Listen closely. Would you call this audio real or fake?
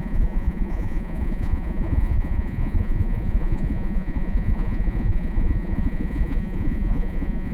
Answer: fake